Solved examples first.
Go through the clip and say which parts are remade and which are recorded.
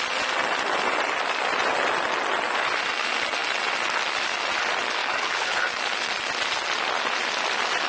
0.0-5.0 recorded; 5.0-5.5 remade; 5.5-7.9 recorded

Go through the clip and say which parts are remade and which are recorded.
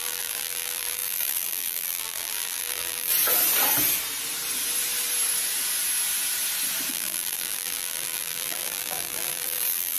0.0-3.1 remade; 3.1-6.9 recorded; 6.9-10.0 remade